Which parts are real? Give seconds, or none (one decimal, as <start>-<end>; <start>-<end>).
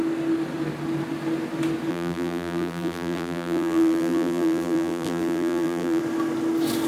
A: 0.0-1.9; 6.0-6.9